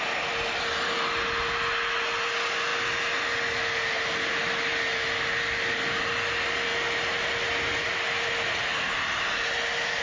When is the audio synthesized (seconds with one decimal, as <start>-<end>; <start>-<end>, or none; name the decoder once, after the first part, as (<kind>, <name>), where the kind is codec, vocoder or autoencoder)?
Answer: none